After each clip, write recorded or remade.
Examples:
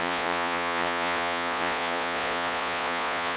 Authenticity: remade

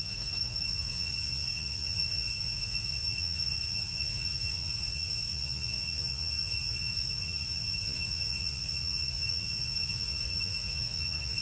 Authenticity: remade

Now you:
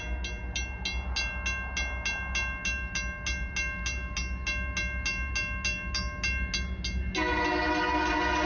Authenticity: recorded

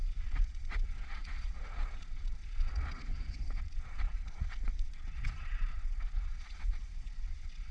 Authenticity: remade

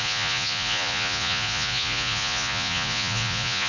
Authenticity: remade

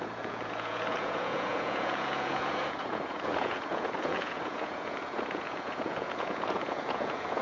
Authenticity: remade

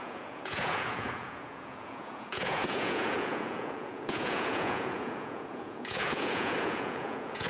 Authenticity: remade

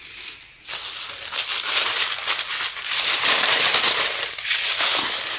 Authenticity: recorded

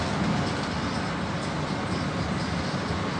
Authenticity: recorded